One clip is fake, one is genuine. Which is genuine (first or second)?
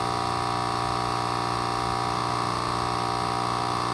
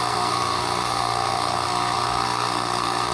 first